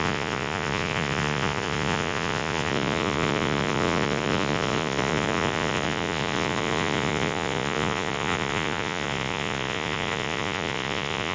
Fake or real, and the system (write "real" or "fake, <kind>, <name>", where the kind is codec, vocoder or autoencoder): fake, vocoder, Vocos